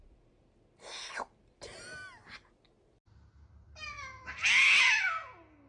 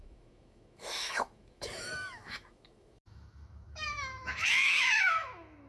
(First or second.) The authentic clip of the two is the first